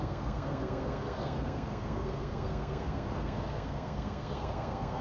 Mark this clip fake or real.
fake